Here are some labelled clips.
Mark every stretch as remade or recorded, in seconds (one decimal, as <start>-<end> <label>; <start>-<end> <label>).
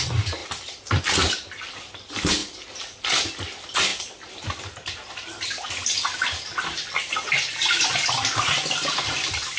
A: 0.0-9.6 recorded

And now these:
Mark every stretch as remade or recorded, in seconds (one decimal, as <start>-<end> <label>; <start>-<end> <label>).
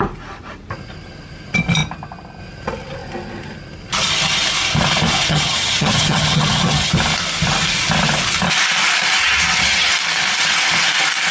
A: 0.0-5.3 recorded; 5.3-6.9 remade; 6.9-9.2 recorded; 9.2-9.9 remade; 9.9-11.3 recorded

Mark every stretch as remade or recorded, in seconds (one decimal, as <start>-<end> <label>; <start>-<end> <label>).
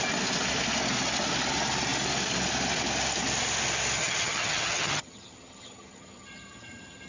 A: 0.0-4.0 recorded; 4.0-7.1 remade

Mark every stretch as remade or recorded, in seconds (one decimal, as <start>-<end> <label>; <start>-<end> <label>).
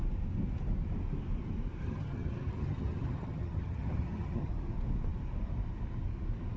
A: 0.0-1.8 recorded; 1.8-4.5 remade; 4.5-6.6 recorded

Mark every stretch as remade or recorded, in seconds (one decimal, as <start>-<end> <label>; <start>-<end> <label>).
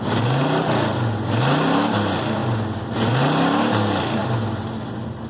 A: 0.0-5.3 recorded